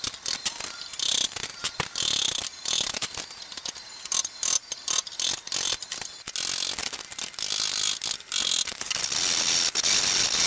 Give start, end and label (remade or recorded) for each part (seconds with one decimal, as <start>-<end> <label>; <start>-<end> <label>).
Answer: 0.0-10.5 recorded